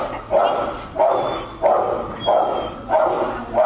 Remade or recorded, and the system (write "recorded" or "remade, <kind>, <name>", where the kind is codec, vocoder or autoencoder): recorded